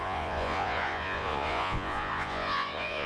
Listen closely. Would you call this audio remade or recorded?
remade